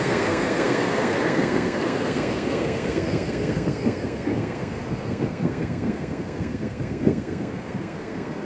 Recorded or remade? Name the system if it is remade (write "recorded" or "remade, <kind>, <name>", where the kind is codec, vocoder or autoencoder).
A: remade, codec, SNAC